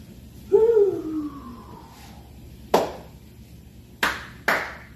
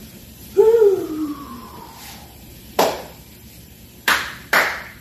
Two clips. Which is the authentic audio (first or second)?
first